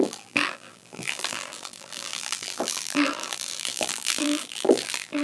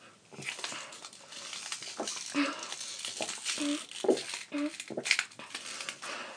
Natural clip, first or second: second